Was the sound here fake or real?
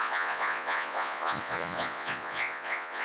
fake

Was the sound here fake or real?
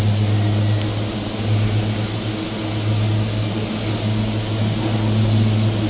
real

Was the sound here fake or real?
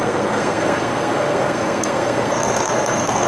fake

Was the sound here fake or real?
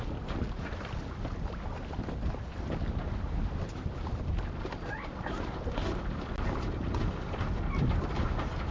real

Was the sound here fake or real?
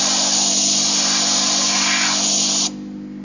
real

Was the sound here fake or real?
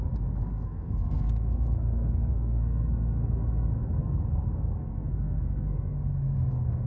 fake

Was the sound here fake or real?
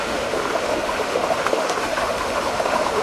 fake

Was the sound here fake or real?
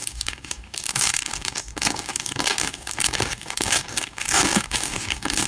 fake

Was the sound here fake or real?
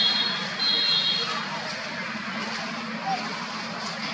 real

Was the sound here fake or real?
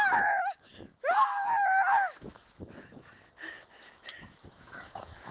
fake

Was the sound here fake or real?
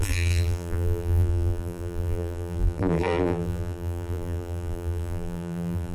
fake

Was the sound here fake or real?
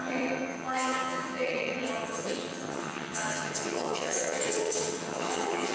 fake